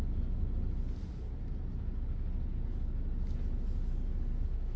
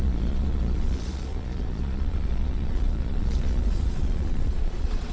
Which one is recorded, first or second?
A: first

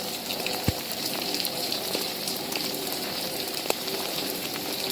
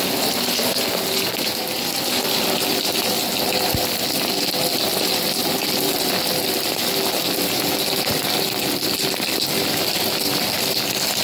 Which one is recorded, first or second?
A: second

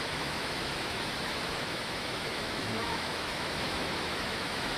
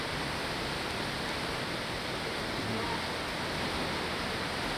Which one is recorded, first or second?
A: second